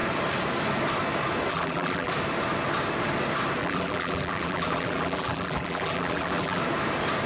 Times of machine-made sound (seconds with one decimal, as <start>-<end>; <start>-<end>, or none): 1.5-2.1; 3.6-6.6

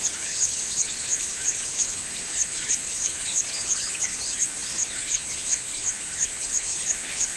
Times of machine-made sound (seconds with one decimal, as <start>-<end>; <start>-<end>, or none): 0.0-7.4